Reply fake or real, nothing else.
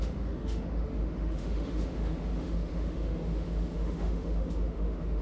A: fake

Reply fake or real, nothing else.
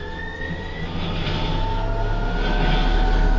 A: real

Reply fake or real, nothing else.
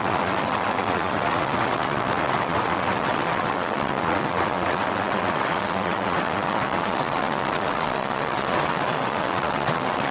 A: fake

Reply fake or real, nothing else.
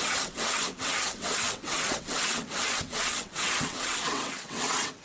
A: fake